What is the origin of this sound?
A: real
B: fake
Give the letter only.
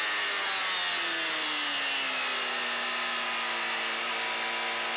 A